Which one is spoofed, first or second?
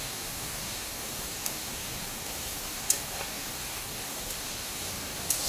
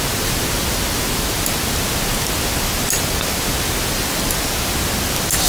first